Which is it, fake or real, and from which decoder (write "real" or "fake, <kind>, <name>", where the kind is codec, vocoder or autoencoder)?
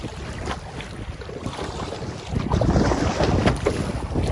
real